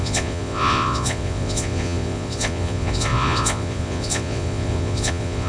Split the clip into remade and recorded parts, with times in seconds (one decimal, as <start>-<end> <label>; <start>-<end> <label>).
0.0-5.5 remade